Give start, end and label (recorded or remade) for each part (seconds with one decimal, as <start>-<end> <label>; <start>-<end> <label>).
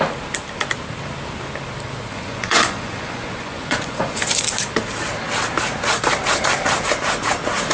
0.0-2.1 recorded; 2.1-4.2 remade; 4.2-7.7 recorded